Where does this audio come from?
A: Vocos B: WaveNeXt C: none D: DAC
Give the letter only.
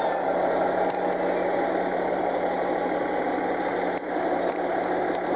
C